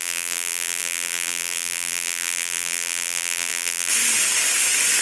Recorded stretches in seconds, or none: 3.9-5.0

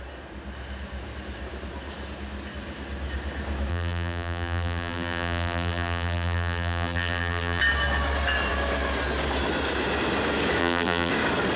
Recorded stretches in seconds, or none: 0.0-3.7; 7.6-10.6; 11.1-11.6

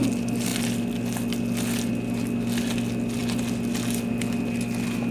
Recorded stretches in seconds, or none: 0.0-5.1

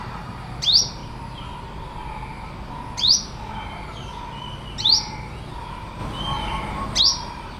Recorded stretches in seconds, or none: 1.0-5.6; 6.0-7.0

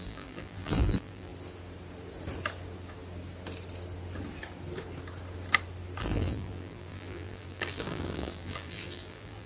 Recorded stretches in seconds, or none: 1.3-6.0

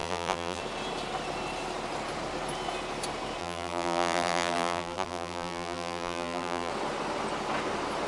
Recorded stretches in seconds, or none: 0.6-3.4; 6.7-8.1

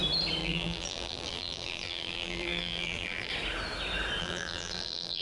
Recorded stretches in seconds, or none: 0.0-0.4; 3.3-4.2

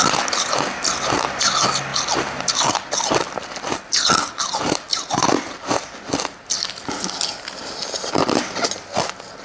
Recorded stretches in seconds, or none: 0.0-4.9; 5.9-9.4